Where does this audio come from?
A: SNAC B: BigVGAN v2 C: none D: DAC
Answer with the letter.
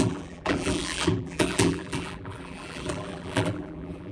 B